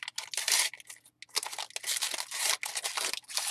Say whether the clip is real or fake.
real